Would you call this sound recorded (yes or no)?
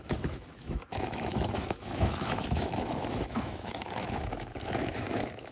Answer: no